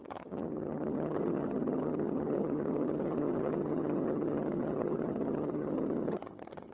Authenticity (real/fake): fake